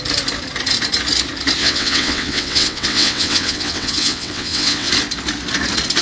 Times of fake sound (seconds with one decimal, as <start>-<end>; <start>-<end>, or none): 1.6-4.9

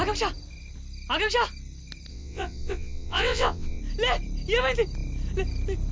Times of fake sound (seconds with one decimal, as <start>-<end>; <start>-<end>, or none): 2.1-3.8

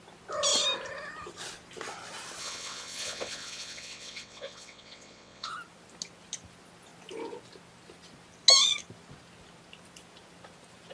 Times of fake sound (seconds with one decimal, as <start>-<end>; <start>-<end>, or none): 2.4-5.5

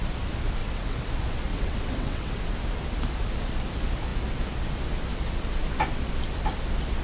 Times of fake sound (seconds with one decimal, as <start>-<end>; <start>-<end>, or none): 0.6-1.1; 1.5-2.4